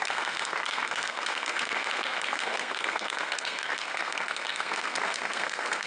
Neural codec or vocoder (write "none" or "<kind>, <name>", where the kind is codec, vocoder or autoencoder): codec, SNAC